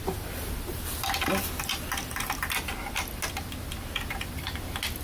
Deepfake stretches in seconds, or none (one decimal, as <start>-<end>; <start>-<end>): 0.0-0.9; 3.9-5.0